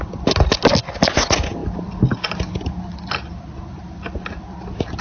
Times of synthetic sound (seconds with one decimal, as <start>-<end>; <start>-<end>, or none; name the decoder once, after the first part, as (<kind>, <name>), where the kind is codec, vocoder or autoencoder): none